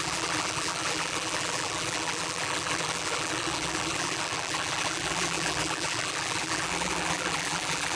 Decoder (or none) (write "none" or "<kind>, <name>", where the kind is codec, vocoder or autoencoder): vocoder, BigVGAN v2